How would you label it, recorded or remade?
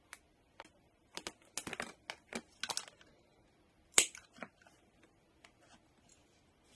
recorded